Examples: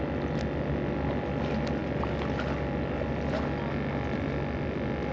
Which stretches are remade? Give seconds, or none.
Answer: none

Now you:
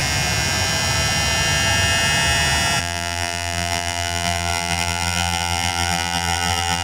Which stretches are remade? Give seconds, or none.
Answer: 2.8-6.8

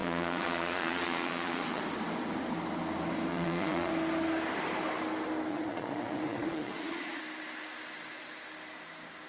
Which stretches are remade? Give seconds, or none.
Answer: 0.0-1.8; 3.3-3.9; 5.5-7.2

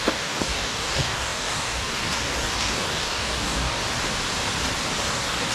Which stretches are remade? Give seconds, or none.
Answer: 0.0-3.8; 5.1-5.5

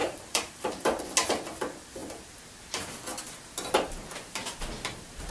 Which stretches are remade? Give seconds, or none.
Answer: 0.0-1.0